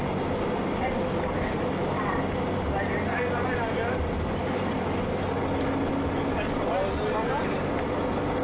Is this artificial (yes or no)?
no